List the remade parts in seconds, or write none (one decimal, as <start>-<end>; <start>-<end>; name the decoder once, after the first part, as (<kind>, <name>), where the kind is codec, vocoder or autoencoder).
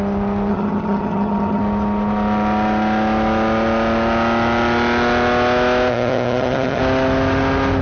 0.5-1.6 (vocoder, HiFi-GAN); 5.9-6.8